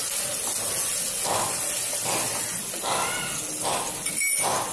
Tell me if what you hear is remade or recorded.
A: recorded